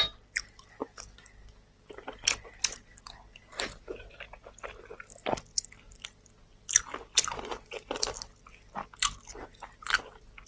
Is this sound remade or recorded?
recorded